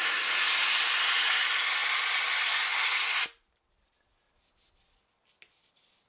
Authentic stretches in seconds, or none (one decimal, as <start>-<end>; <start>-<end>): 0.0-6.1